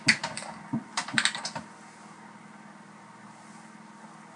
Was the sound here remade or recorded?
recorded